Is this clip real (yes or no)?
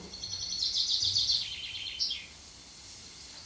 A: yes